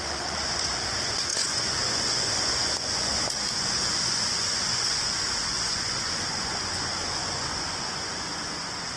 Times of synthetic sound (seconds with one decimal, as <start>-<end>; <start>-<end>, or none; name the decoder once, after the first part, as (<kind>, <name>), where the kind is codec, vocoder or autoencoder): 0.0-9.0 (vocoder, Vocos)